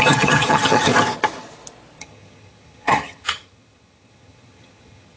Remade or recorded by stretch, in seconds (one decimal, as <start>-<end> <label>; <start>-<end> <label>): 0.0-0.9 remade; 0.9-2.0 recorded; 2.0-5.2 remade